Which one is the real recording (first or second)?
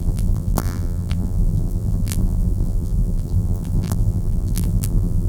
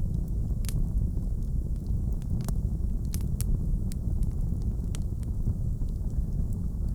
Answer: second